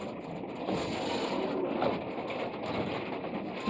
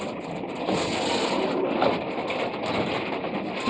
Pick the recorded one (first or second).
first